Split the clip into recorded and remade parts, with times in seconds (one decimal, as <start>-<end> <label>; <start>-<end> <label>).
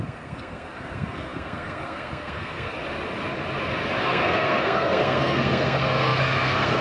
0.0-2.7 remade; 2.7-4.0 recorded; 4.0-6.8 remade